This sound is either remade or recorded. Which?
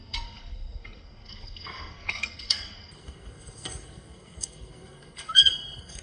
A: remade